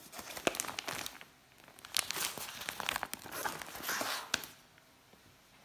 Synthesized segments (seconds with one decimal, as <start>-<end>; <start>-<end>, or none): none